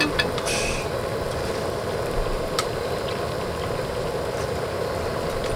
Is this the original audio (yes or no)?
yes